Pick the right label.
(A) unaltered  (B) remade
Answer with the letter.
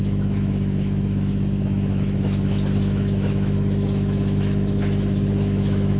B